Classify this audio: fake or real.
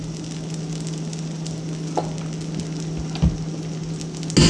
real